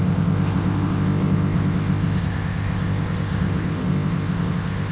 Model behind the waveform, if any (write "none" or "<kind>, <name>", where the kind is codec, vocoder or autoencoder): codec, ZipCodec